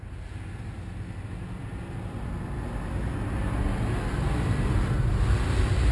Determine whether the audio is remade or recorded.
recorded